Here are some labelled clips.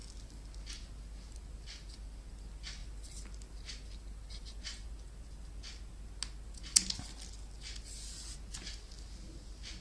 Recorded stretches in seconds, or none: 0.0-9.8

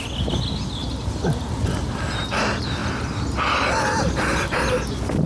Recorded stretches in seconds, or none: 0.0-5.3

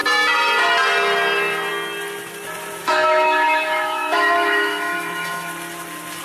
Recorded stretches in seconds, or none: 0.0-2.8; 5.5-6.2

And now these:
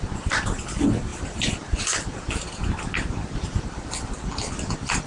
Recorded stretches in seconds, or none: 0.0-1.1; 4.1-5.1

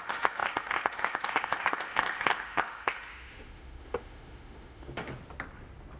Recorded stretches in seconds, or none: 5.1-6.0